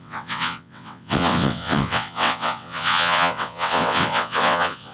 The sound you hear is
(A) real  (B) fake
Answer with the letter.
B